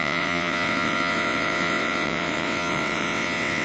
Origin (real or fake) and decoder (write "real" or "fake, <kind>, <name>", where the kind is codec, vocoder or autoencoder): fake, vocoder, WaveNeXt